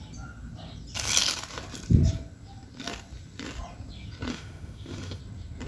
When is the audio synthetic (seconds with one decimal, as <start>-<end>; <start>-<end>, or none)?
4.3-5.2